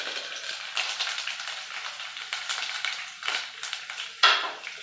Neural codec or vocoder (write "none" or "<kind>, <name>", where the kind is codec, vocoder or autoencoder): vocoder, BigVGAN v2